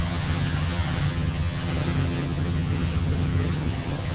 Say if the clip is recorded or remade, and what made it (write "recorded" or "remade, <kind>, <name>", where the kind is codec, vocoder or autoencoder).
remade, vocoder, HiFi-GAN